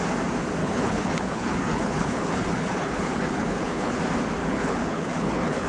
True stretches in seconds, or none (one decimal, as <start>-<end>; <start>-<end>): 0.0-0.6; 4.0-4.4